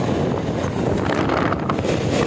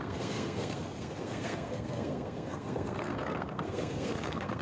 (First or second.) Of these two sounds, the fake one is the second